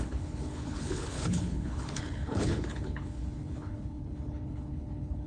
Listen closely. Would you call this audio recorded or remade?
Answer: remade